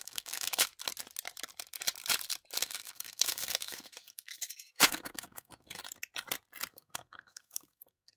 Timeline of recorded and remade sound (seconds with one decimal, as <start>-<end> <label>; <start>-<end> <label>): 0.0-0.7 remade; 0.7-2.6 recorded; 2.6-5.8 remade; 5.8-6.7 recorded; 6.7-8.2 remade